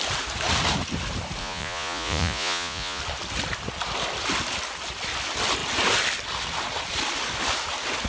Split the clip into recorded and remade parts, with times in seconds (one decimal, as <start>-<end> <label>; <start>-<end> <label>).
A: 0.0-1.4 recorded; 1.4-3.0 remade; 3.0-8.1 recorded

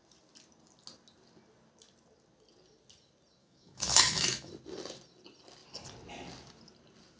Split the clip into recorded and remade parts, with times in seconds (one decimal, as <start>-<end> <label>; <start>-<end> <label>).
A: 0.0-3.4 recorded; 3.4-4.5 remade; 4.5-7.2 recorded

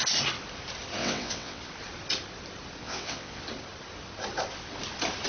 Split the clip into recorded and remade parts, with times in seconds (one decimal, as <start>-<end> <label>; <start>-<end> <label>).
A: 0.0-1.0 recorded; 1.0-1.6 remade; 1.6-2.8 recorded; 2.8-3.4 remade; 3.4-5.3 recorded

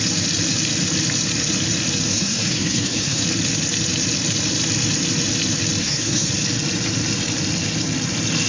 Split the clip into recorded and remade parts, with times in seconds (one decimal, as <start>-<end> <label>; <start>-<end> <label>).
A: 0.0-2.1 recorded; 2.1-3.2 remade; 3.2-5.8 recorded; 5.8-6.3 remade; 6.3-8.5 recorded

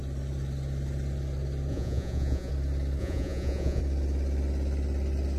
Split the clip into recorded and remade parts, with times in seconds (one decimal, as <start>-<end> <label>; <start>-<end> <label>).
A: 0.0-1.7 recorded; 1.7-2.5 remade; 2.5-3.0 recorded; 3.0-3.8 remade; 3.8-5.4 recorded